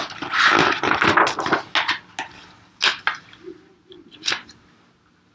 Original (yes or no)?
yes